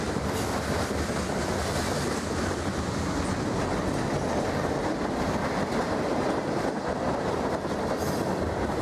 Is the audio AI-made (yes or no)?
no